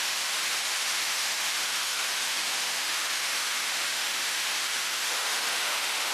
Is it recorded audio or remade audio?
remade